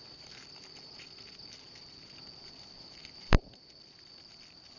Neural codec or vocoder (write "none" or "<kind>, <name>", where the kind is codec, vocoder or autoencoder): none